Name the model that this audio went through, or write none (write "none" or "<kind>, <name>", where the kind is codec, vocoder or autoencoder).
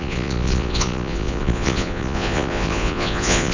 vocoder, Vocos